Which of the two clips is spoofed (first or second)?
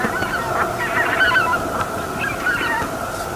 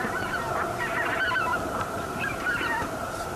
second